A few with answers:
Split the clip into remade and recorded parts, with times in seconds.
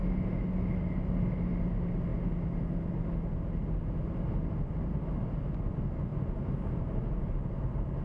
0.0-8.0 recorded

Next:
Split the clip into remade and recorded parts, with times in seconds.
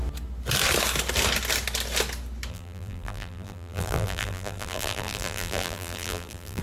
0.0-2.5 recorded; 2.5-6.6 remade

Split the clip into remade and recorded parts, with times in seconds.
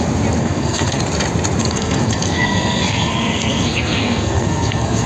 0.0-0.4 recorded; 0.4-1.0 remade; 1.0-1.6 recorded; 1.6-5.1 remade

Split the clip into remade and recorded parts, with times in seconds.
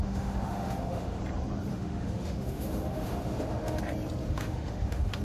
0.0-1.2 remade; 1.2-1.7 recorded; 1.7-3.8 remade; 3.8-4.2 recorded; 4.2-5.2 remade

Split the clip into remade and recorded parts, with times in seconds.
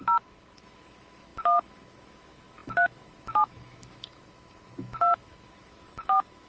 0.0-6.5 remade